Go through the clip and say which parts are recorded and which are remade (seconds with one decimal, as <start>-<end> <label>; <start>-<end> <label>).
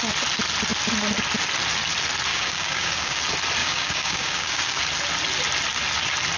0.0-2.3 recorded; 2.3-3.2 remade; 3.2-3.6 recorded; 3.6-4.8 remade; 4.8-6.4 recorded